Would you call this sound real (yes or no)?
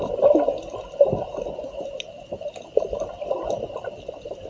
yes